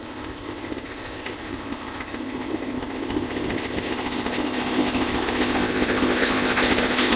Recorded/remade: remade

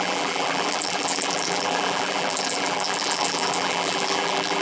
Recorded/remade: remade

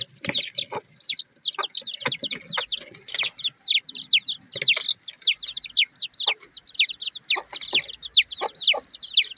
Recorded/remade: recorded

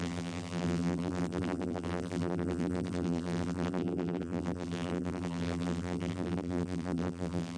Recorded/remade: remade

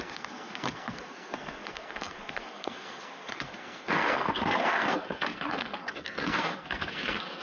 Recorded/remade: remade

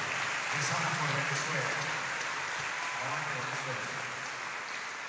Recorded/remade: remade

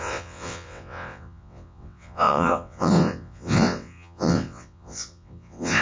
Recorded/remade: remade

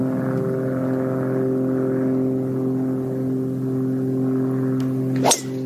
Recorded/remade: recorded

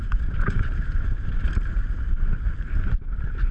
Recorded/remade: recorded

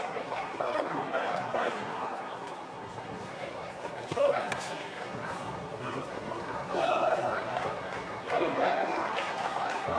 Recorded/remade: remade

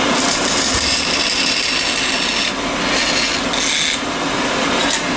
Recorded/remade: recorded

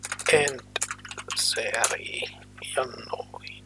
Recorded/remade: recorded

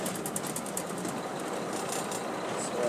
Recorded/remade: recorded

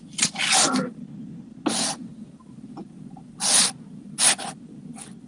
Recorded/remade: recorded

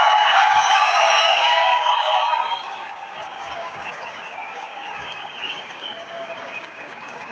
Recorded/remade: remade